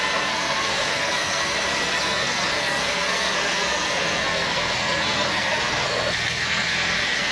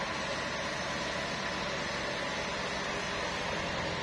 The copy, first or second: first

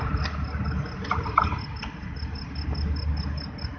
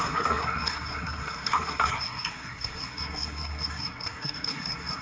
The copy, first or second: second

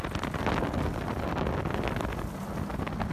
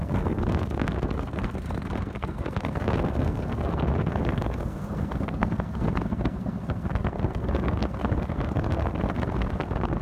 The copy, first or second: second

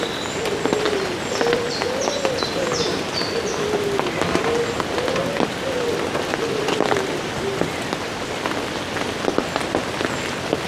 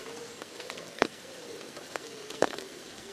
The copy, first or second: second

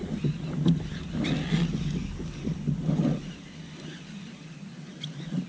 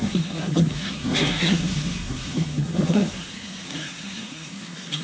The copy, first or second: second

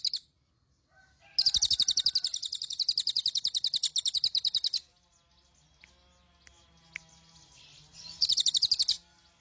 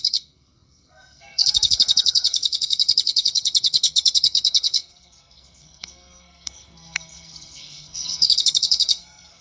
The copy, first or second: second